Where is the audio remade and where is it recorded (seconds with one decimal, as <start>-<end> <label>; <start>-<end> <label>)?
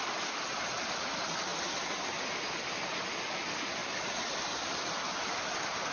0.0-5.9 recorded